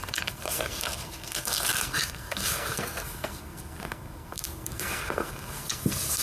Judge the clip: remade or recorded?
remade